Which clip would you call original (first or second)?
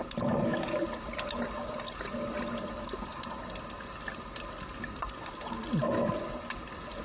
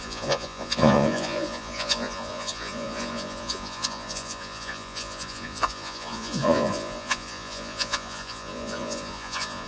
first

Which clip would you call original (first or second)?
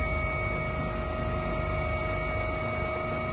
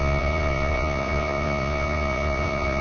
first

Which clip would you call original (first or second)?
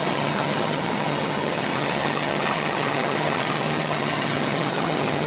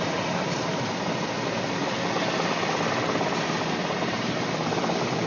second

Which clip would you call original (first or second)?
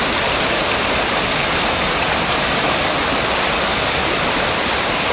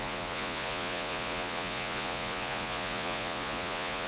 first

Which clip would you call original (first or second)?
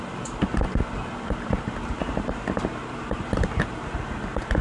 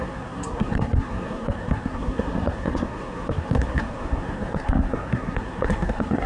first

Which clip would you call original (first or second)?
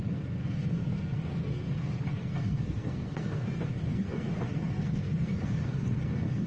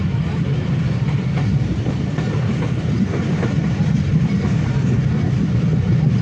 second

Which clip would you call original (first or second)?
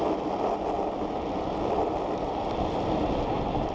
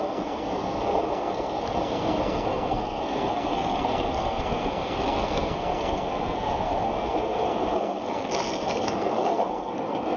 first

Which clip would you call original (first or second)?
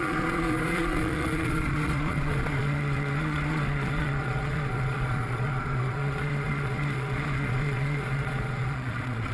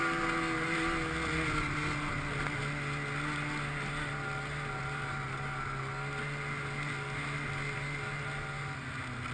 second